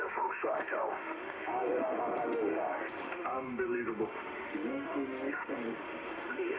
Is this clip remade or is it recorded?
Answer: remade